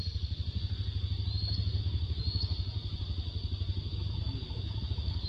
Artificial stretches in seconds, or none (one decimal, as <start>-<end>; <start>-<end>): 1.8-2.2; 3.9-5.3